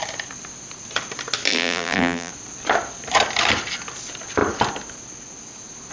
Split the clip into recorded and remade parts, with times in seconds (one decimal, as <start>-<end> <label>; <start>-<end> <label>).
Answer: 0.0-1.5 recorded; 1.5-2.3 remade; 2.3-5.9 recorded